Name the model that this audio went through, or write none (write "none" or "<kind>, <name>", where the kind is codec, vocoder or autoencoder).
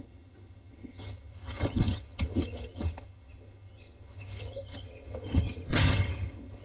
vocoder, HiFi-GAN